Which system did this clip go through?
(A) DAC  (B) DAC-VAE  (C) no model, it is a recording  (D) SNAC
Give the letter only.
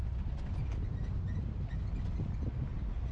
C